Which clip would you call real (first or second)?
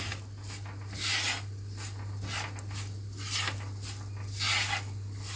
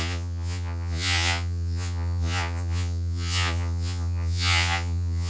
first